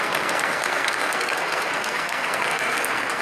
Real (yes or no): no